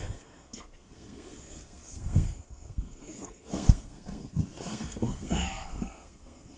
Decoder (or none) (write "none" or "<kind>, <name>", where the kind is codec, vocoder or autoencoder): codec, SNAC